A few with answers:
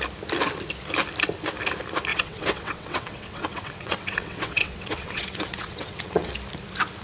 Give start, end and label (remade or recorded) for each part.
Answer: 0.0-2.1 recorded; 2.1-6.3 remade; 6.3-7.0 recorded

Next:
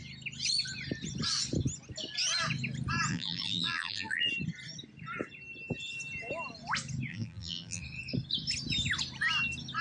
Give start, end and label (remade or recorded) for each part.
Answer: 0.0-3.1 recorded; 3.1-4.3 remade; 4.3-7.1 recorded; 7.1-7.8 remade; 7.8-9.8 recorded